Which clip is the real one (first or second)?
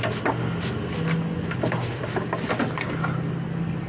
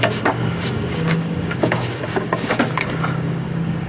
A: first